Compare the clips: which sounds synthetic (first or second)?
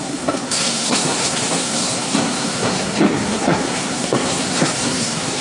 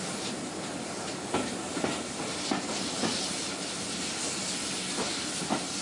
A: first